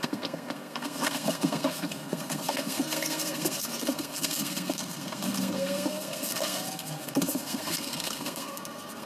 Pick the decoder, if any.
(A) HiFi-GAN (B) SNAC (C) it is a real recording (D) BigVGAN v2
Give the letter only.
B